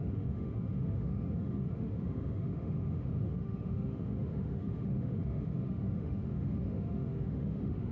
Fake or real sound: fake